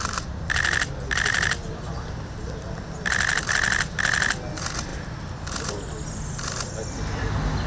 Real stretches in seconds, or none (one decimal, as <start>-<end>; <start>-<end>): 0.0-7.7